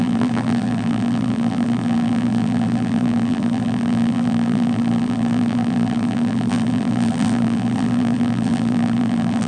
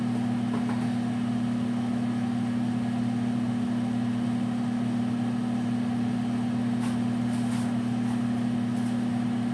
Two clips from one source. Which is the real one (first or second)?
second